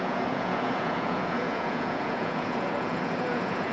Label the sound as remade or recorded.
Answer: remade